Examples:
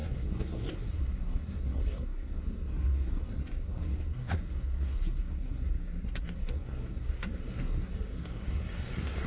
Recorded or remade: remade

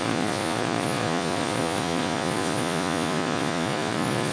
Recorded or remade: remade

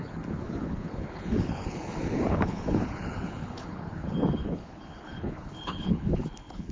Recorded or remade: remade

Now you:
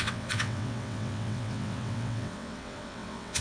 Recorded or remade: remade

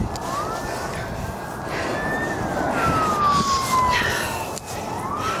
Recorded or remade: recorded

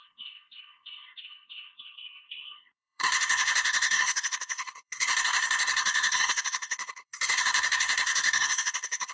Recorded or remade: remade